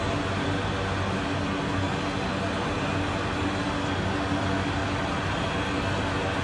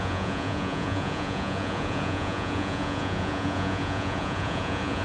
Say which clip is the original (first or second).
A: first